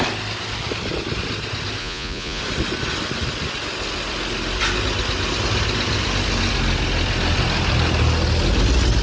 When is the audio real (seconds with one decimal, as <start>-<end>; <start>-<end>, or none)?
0.0-1.8; 2.4-9.0